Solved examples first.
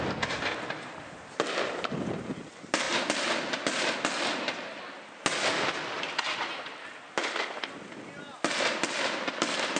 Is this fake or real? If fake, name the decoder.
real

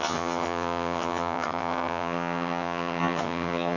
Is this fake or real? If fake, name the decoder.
fake, vocoder, HiFi-GAN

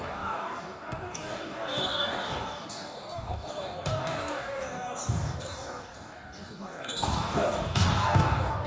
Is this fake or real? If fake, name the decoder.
fake, codec, DAC